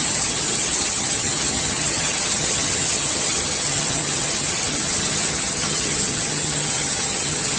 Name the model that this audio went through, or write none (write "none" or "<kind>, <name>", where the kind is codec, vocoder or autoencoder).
vocoder, HiFi-GAN